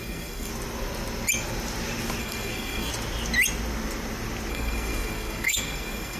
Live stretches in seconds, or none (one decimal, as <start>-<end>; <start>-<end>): 0.5-2.2; 2.9-4.5